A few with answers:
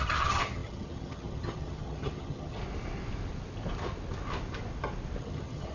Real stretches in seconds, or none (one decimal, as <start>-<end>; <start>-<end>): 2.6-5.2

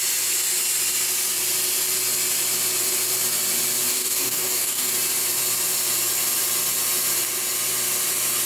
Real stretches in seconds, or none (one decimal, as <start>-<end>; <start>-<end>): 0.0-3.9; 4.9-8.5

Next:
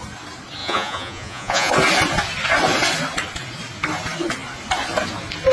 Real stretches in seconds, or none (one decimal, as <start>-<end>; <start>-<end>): 0.0-0.6; 1.7-5.5